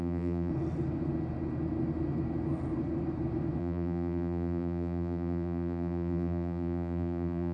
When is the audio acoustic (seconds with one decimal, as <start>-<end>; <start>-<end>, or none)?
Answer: 0.5-3.6